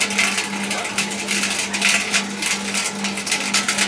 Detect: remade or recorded recorded